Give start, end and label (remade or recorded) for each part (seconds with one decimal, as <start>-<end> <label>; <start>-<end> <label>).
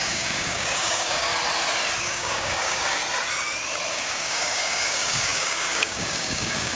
0.0-1.3 remade; 1.3-2.0 recorded; 2.0-3.0 remade; 3.0-3.9 recorded; 3.9-6.8 remade